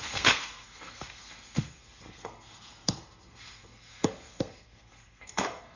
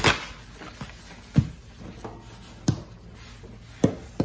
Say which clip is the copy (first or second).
first